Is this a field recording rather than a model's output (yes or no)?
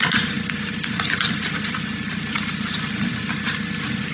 yes